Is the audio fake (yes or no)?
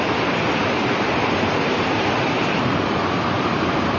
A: yes